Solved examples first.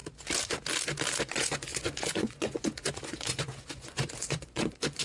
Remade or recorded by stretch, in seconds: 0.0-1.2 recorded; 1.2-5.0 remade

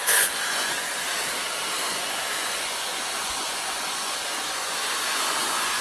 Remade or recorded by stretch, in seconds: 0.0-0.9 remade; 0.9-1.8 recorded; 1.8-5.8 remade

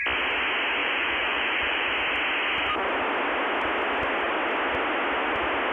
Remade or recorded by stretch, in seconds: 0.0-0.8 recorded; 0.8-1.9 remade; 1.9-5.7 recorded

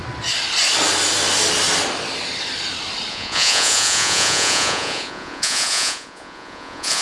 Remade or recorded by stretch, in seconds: 0.0-3.1 recorded; 3.1-7.0 remade

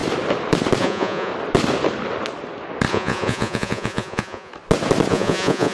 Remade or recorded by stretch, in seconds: 0.0-0.8 recorded; 0.8-1.3 remade; 1.3-2.9 recorded; 2.9-4.5 remade; 4.5-5.1 recorded; 5.1-5.7 remade